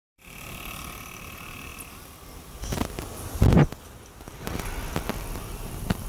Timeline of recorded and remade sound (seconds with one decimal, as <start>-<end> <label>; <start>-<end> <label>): 0.0-1.7 remade; 1.7-5.4 recorded; 5.4-6.1 remade